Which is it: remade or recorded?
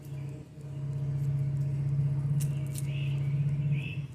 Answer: recorded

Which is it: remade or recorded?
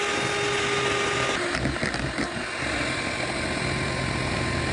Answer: recorded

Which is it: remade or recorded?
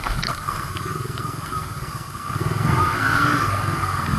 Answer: remade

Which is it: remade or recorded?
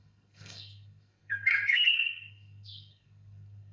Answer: remade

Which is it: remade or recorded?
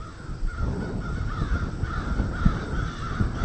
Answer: recorded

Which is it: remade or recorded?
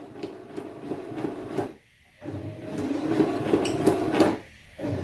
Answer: recorded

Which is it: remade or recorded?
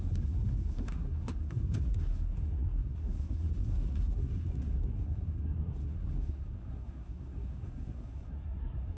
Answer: remade